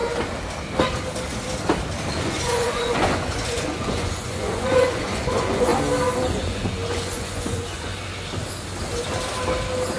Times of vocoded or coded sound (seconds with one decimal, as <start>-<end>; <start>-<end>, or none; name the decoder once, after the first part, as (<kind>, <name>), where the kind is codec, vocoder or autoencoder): 2.1-5.7 (vocoder, Vocos); 6.3-7.9